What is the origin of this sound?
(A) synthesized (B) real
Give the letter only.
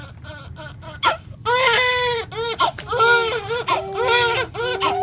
B